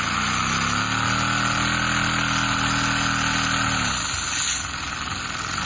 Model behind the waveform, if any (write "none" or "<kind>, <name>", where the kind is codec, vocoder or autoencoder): none